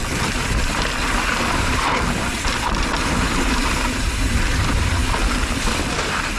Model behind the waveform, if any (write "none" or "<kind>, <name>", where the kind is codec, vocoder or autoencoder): vocoder, BigVGAN v2